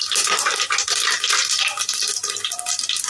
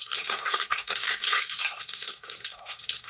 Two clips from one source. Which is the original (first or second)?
first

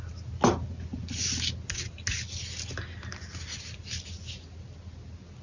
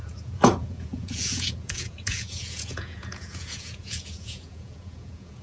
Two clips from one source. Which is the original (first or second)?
first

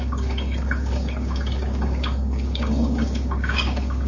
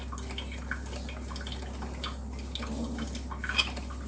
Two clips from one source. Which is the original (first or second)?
second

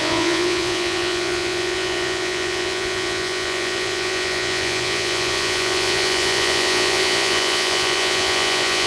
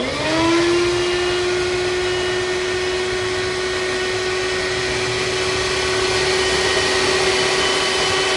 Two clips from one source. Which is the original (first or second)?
second